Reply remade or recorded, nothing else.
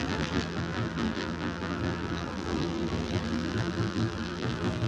remade